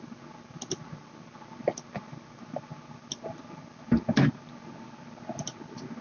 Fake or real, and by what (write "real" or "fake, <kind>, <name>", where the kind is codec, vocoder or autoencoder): real